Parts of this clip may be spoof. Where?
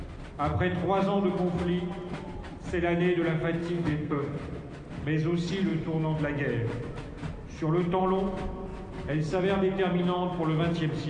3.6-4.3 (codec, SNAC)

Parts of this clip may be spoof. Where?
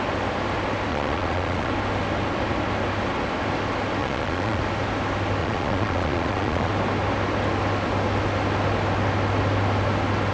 0.9-1.7 (vocoder, Vocos); 4.0-4.6; 5.4-6.7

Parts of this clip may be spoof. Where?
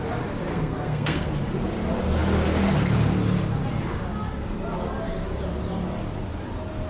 0.5-1.3 (codec, SNAC)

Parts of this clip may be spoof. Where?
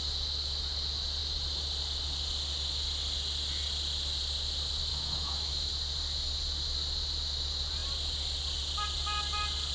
4.9-5.7 (autoencoder, DAC-VAE)